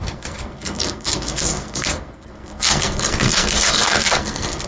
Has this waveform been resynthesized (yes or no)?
yes